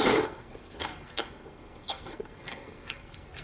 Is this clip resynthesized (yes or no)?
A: yes